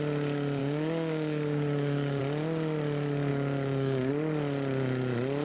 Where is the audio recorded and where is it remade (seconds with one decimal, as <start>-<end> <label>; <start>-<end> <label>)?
0.0-0.6 recorded; 0.6-2.2 remade; 2.2-3.3 recorded; 3.3-4.1 remade; 4.1-5.4 recorded